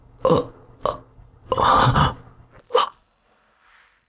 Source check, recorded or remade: recorded